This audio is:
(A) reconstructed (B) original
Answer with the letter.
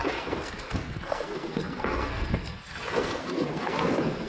A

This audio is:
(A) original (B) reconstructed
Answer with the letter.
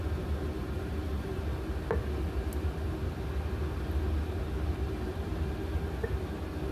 A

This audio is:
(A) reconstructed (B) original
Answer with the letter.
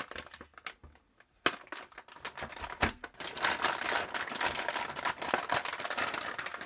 B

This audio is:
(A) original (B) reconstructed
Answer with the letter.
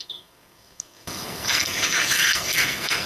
B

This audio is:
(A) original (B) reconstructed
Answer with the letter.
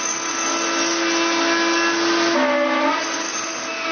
A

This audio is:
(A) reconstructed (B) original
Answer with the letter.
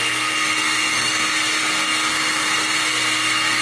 A